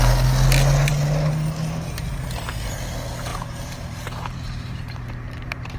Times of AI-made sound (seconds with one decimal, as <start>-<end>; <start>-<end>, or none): 3.3-5.8